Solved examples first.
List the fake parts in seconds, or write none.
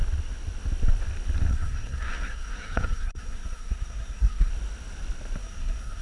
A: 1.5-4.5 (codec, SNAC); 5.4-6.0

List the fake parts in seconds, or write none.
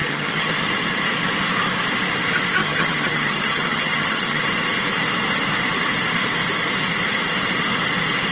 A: 0.0-0.5 (vocoder, HiFi-GAN); 2.6-4.4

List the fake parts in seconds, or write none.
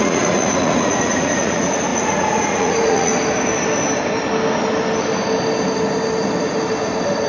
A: 0.0-3.1 (vocoder, Vocos)